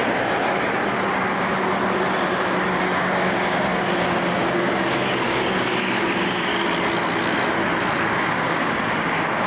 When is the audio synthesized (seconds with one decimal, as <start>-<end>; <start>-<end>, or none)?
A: 2.7-6.5; 8.3-9.5